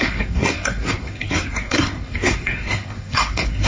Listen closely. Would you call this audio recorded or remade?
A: remade